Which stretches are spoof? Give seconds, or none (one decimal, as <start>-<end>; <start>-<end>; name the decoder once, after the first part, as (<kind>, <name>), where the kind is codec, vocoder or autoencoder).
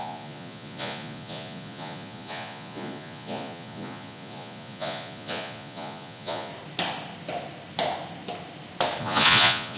0.0-6.5 (vocoder, Vocos); 9.0-9.8